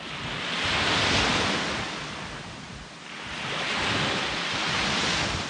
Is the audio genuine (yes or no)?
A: yes